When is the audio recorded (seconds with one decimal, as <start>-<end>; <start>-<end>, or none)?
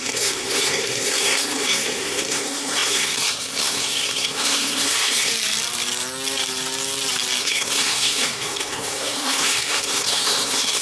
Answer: 5.3-7.4